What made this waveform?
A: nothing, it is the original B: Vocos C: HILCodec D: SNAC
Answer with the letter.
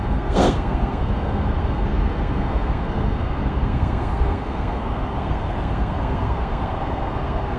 D